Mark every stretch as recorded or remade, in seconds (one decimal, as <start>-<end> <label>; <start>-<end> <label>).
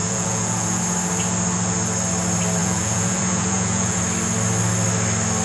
0.0-0.8 remade; 0.8-2.6 recorded; 2.6-4.0 remade; 4.0-5.4 recorded